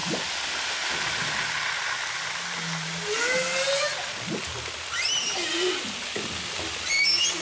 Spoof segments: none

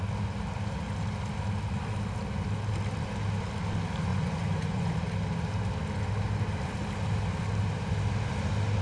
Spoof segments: 4.1-4.9